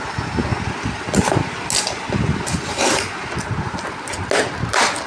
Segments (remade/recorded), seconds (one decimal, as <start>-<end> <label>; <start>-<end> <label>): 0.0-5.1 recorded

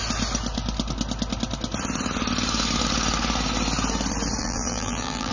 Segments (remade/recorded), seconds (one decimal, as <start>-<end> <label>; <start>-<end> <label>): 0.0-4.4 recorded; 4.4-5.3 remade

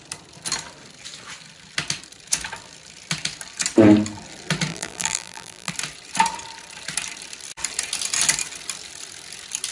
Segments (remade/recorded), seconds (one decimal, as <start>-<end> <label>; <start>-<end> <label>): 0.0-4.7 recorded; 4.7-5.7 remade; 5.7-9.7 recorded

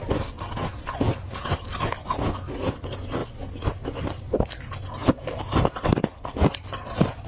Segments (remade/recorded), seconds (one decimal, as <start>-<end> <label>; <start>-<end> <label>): 0.0-3.2 recorded; 3.2-7.3 remade